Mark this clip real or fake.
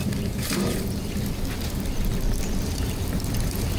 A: fake